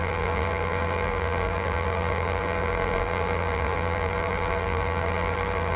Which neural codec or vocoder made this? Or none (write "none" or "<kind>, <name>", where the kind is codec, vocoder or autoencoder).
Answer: vocoder, BigVGAN v2